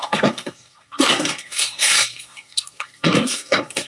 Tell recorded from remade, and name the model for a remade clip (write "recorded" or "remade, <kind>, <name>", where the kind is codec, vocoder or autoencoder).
remade, codec, SNAC